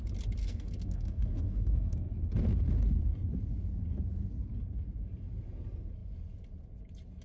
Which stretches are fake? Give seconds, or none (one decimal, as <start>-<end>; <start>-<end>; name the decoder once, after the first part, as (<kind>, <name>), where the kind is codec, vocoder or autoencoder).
0.4-2.1 (codec, SNAC)